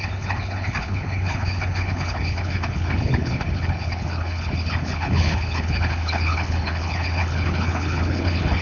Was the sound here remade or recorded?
remade